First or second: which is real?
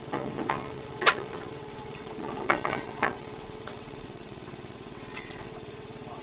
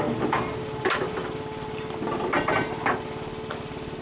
second